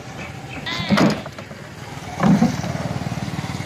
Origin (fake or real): real